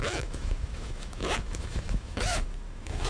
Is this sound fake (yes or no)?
yes